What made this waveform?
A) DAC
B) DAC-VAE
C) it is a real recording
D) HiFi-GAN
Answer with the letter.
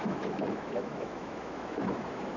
B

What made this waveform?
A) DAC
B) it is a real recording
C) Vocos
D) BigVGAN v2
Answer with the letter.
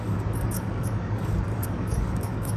A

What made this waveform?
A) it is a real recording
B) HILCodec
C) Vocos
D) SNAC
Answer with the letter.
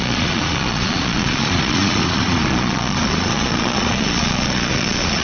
C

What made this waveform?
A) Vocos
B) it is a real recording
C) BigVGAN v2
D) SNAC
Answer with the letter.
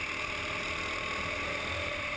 B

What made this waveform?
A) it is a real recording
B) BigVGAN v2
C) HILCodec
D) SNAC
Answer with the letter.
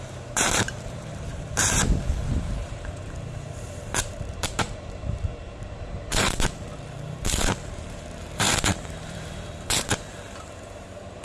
B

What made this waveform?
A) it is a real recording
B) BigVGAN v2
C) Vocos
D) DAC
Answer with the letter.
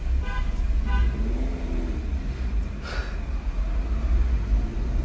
A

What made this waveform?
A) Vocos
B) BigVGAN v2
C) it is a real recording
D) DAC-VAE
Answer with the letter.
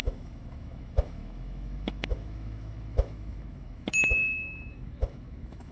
D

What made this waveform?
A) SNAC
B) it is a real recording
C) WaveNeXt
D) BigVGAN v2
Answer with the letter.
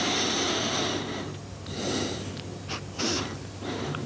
B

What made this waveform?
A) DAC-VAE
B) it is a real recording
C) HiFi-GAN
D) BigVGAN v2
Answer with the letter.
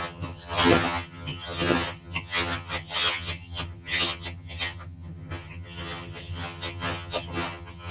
C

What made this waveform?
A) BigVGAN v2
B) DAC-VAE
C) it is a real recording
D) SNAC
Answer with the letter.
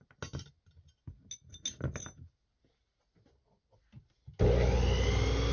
C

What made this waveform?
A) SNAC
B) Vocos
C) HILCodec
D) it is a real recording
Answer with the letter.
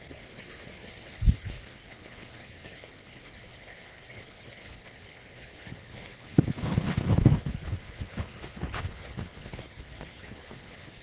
C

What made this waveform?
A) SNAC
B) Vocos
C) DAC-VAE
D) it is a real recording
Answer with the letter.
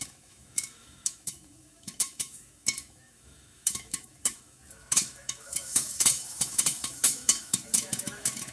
C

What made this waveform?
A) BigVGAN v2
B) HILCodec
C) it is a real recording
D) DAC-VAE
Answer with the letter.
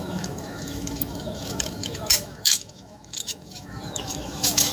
D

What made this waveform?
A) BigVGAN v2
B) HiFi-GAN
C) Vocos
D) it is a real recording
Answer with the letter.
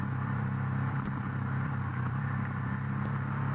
A